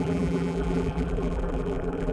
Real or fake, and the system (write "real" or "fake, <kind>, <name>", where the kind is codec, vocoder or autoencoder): fake, vocoder, BigVGAN v2